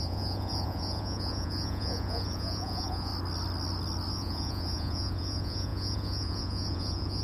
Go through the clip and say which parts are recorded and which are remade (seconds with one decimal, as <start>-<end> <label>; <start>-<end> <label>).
0.0-3.1 remade; 3.1-4.1 recorded; 4.1-7.2 remade